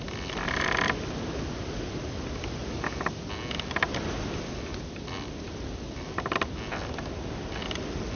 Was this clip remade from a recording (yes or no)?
no